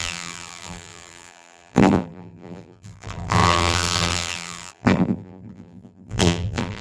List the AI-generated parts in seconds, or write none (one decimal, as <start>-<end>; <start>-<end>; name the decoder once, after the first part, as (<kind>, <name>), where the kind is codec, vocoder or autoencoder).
0.0-6.8 (vocoder, BigVGAN v2)